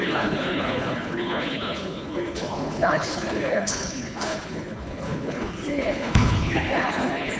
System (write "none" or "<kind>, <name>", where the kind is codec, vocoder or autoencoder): codec, HILCodec